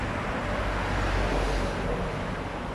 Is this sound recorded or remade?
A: recorded